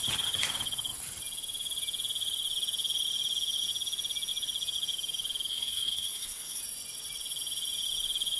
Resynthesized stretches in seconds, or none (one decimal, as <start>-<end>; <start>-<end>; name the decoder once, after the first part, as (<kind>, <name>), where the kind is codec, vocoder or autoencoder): 5.5-6.6 (codec, SNAC)